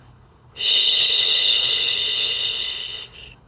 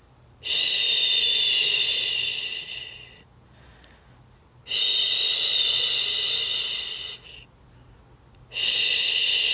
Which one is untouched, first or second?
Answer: second